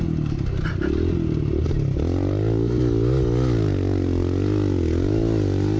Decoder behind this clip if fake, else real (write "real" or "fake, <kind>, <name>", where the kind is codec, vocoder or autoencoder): real